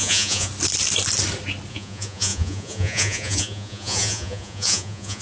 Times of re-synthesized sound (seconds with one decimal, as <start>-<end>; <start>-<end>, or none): 0.0-0.5; 1.7-5.2